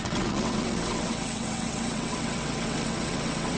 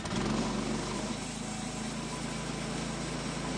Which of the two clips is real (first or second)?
second